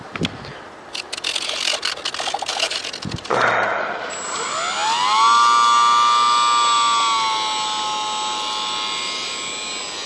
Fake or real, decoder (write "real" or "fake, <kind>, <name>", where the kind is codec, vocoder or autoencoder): real